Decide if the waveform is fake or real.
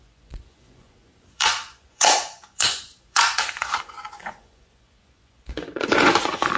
fake